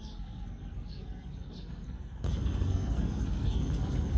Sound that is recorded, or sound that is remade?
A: remade